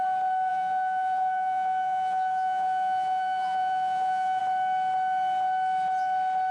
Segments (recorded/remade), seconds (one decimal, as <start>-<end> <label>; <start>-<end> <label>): 0.0-0.5 recorded; 0.5-4.4 remade; 4.4-6.5 recorded